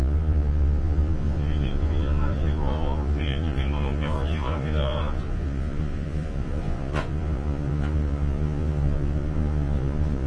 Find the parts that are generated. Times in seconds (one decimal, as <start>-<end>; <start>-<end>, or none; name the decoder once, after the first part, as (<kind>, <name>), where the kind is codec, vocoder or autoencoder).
0.0-10.3 (vocoder, Vocos)